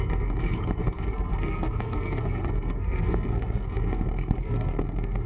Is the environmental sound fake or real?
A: fake